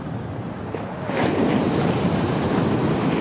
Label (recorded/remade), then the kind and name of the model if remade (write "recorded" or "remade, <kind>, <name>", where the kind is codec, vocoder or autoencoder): recorded